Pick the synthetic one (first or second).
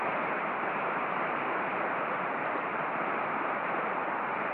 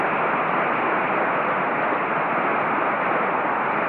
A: first